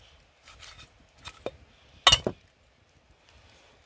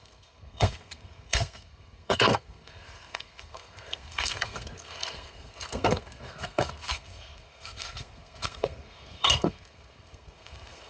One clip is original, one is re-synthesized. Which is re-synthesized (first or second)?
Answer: second